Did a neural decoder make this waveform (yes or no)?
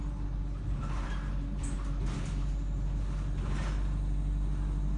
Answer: no